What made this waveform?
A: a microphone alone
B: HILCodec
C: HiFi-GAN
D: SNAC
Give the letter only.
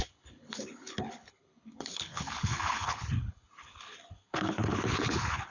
B